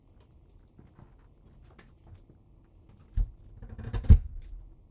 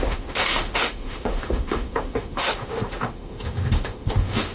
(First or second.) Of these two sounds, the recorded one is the first